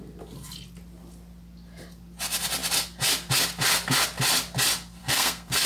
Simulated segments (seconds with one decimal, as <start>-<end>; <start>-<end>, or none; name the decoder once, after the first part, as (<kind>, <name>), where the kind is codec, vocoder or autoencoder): 5.0-5.7 (codec, SNAC)